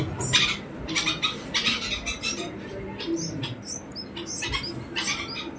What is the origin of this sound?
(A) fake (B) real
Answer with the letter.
B